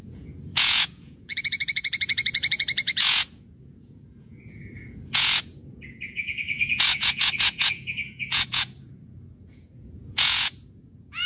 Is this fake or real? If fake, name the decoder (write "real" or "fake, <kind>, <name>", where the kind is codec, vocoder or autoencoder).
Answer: fake, vocoder, Vocos